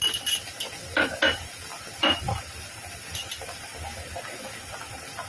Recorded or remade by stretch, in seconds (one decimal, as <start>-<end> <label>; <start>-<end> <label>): 0.0-5.3 recorded